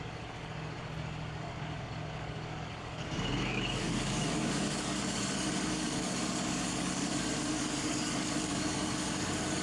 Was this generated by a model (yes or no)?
yes